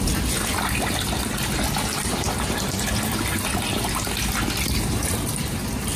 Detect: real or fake real